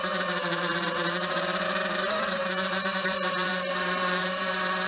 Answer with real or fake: fake